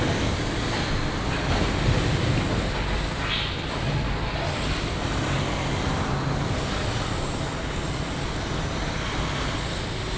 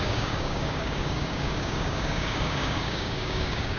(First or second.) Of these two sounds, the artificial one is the second